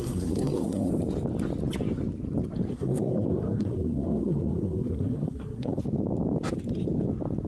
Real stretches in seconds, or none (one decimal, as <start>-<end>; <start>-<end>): 0.9-2.7; 5.8-7.5